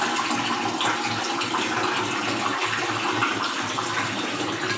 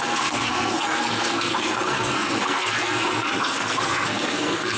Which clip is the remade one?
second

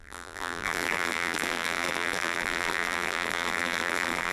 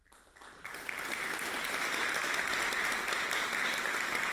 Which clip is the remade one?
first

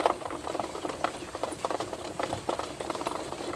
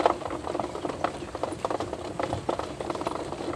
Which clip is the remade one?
first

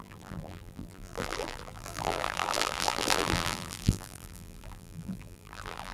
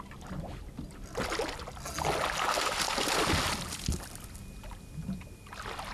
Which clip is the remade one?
first